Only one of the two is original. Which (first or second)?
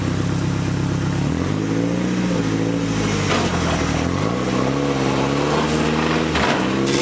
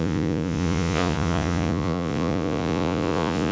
first